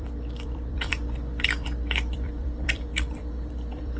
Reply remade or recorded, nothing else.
remade